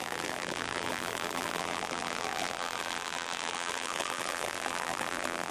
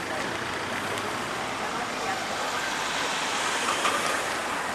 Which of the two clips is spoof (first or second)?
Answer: first